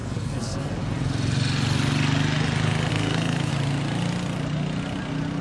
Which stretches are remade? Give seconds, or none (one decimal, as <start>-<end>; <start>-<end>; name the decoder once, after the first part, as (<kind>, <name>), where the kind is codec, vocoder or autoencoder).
0.0-0.7 (codec, SNAC); 2.9-3.5